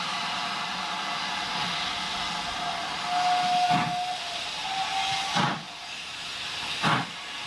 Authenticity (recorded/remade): recorded